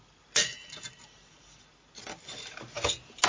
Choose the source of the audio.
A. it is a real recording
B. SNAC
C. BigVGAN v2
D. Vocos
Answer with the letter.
A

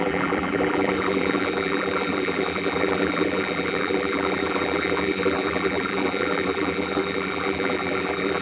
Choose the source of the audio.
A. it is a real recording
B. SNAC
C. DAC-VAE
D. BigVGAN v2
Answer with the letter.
D